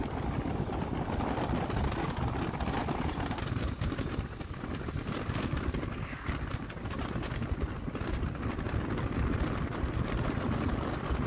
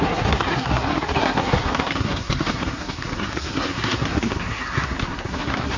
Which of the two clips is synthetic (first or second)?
second